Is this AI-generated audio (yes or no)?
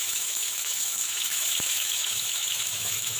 yes